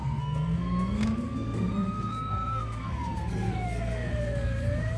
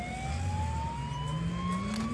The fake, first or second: first